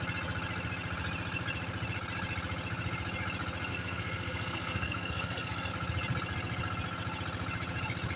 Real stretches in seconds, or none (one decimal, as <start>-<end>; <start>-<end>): 0.0-3.7; 5.7-8.2

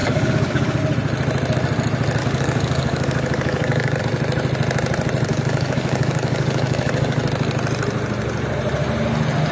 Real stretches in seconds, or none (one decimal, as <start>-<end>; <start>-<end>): 0.8-2.2; 4.0-5.3; 7.2-9.5

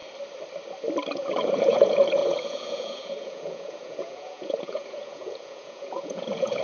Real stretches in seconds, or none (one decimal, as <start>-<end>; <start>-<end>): 0.0-1.1

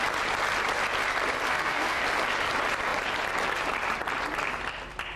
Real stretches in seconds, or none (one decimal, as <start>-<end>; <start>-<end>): 0.0-1.5; 2.0-5.2